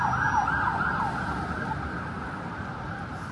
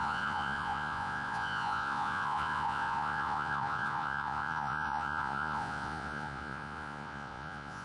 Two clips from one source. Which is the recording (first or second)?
first